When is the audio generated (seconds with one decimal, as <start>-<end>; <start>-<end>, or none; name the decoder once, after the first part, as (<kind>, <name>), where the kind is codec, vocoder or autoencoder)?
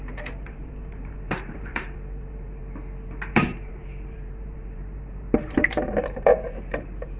0.0-2.6 (vocoder, BigVGAN v2); 3.3-7.2